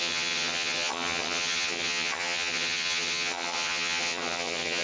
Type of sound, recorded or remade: remade